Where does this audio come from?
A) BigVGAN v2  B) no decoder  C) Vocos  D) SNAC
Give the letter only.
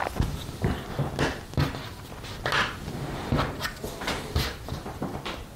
B